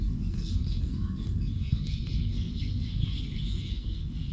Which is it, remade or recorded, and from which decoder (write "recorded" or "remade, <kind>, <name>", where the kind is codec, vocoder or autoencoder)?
remade, codec, SNAC